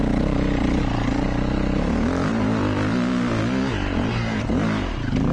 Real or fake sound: real